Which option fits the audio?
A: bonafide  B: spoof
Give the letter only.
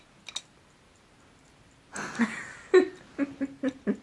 A